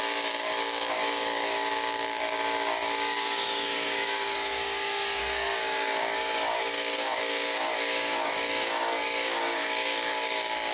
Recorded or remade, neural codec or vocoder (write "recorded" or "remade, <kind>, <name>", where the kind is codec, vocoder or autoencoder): remade, codec, DAC